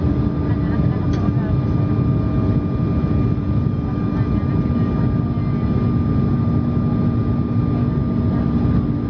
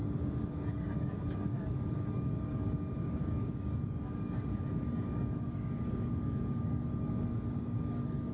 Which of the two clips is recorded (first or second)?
first